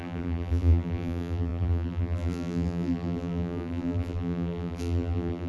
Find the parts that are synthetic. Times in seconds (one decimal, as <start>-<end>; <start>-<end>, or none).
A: 0.0-5.5